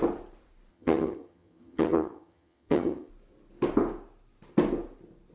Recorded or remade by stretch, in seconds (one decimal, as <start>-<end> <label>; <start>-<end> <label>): 0.0-0.7 recorded; 0.7-3.1 remade; 3.1-5.3 recorded